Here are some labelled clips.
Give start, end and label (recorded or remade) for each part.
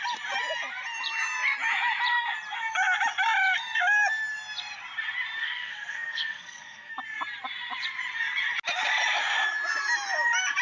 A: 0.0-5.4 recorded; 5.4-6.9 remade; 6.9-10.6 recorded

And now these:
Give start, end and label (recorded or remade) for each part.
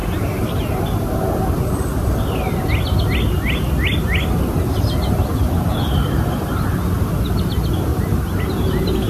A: 0.0-7.9 recorded; 7.9-8.4 remade; 8.4-9.1 recorded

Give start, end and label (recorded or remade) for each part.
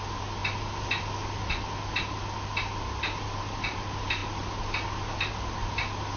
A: 0.0-6.2 recorded